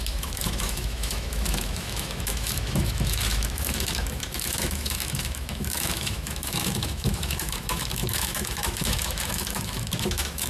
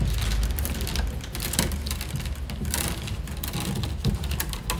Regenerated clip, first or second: first